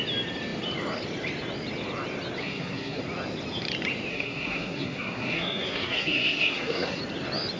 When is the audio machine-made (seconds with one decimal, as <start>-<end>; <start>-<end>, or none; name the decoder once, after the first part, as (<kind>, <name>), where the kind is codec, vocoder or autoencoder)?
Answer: 2.4-3.0 (codec, SNAC); 4.1-7.0